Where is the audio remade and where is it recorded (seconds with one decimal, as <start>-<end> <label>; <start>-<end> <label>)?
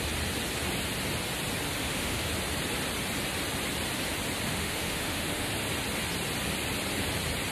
0.0-1.8 recorded; 1.8-2.3 remade; 2.3-4.5 recorded; 4.5-5.5 remade; 5.5-7.5 recorded